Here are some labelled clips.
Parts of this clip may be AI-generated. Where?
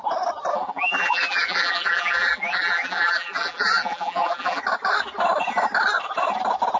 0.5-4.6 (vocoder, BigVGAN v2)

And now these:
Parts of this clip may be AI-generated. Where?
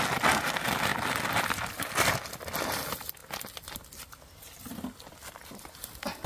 none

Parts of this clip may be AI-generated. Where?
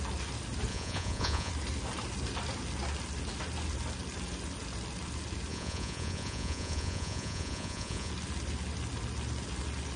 0.7-1.5 (vocoder, Vocos); 5.5-8.1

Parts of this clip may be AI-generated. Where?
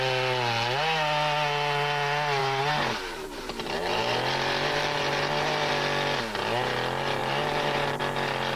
2.4-5.7 (vocoder, BigVGAN v2); 7.2-8.0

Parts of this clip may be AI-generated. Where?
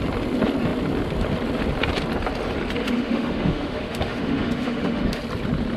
2.8-5.2 (autoencoder, DAC-VAE)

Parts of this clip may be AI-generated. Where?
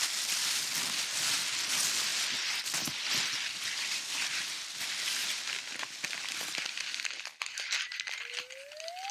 none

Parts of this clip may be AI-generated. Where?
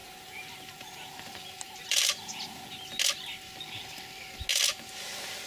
0.0-2.6 (vocoder, BigVGAN v2); 4.5-5.1